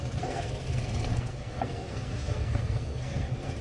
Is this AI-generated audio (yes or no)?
yes